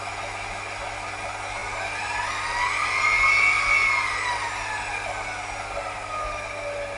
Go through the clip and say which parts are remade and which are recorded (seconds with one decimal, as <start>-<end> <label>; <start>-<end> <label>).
0.0-7.0 recorded